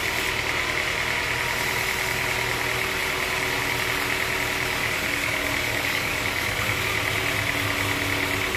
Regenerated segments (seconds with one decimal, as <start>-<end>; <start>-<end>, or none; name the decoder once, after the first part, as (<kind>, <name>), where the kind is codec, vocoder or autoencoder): 4.8-6.8 (codec, DAC)